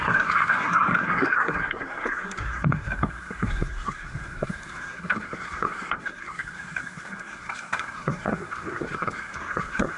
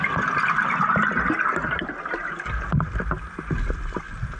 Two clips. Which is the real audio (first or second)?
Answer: second